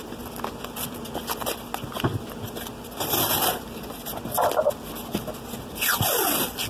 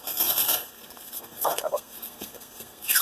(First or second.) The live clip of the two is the first